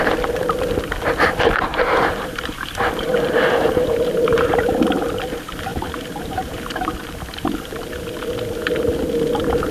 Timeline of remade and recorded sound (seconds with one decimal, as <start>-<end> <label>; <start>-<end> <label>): 0.0-1.7 recorded; 1.7-4.8 remade; 4.8-5.7 recorded; 5.7-7.5 remade; 7.5-9.7 recorded